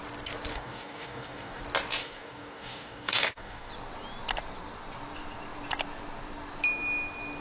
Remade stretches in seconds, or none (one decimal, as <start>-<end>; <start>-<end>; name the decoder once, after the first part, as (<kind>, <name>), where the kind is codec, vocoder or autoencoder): 0.5-1.6 (codec, DAC); 2.0-3.7